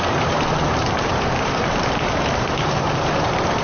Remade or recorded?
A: remade